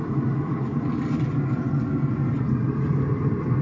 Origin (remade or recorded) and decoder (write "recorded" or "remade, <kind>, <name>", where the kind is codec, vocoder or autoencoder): recorded